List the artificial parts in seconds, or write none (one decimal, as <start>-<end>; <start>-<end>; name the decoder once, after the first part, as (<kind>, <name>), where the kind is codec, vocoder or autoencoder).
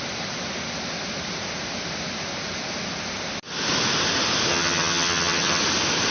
4.5-5.6 (vocoder, HiFi-GAN)